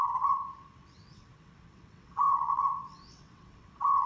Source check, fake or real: fake